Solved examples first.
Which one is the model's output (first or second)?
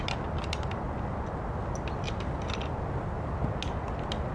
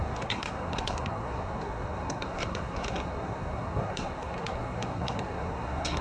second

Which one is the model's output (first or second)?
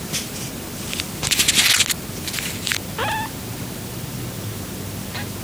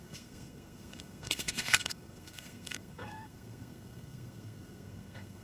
second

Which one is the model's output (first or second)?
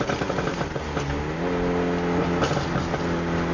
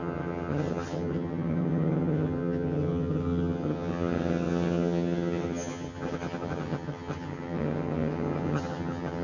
second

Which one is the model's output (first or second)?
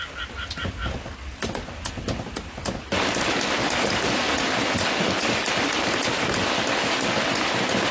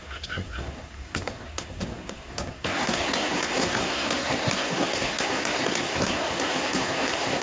second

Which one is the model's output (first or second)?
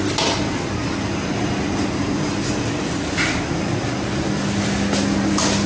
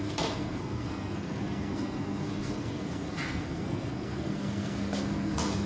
second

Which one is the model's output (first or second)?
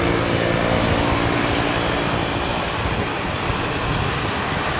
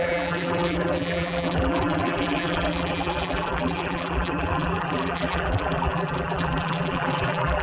second